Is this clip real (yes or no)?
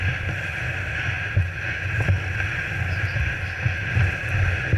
yes